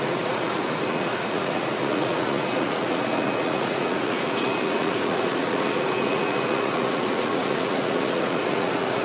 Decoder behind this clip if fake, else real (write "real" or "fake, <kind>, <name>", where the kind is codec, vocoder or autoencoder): fake, vocoder, Vocos